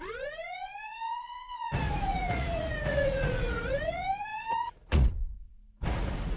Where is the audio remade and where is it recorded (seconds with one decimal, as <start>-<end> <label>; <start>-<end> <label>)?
0.0-6.4 remade